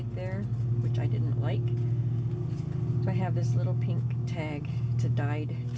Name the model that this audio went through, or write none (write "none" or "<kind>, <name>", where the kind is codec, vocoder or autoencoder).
none